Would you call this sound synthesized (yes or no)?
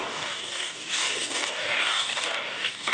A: yes